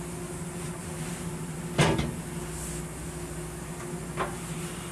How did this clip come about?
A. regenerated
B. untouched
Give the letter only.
B